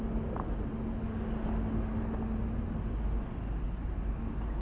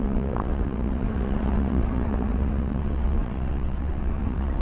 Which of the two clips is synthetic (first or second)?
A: second